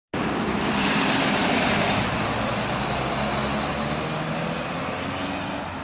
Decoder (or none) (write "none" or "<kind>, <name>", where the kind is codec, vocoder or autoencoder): none